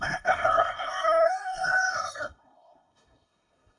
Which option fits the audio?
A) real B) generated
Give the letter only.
B